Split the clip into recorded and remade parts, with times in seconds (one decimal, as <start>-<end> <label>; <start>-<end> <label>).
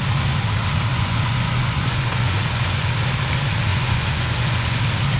0.0-0.9 recorded; 0.9-2.9 remade; 2.9-3.7 recorded; 3.7-4.8 remade; 4.8-5.2 recorded